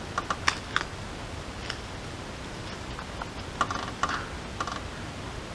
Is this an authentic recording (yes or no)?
yes